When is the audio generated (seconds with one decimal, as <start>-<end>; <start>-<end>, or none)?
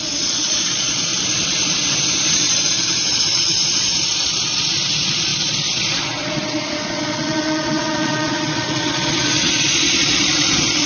0.0-1.1; 2.3-10.9